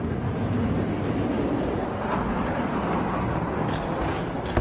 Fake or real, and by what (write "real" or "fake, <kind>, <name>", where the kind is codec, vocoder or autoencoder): real